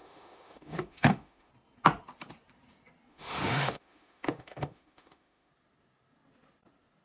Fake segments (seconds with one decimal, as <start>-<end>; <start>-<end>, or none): 0.0-1.5; 3.1-5.5